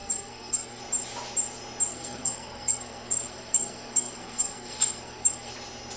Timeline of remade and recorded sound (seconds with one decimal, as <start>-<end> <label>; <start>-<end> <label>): 0.0-0.8 remade; 0.8-1.9 recorded; 1.9-5.5 remade; 5.5-6.0 recorded